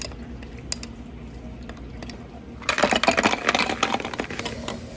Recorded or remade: recorded